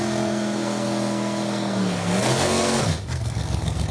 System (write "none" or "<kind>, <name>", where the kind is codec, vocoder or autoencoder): codec, SNAC